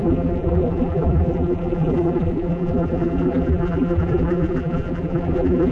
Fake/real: fake